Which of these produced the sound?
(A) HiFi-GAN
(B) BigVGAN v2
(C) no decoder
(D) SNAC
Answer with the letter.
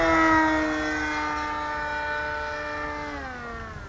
C